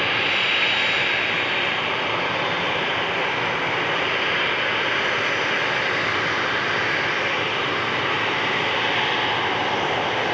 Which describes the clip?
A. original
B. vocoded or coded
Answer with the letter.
A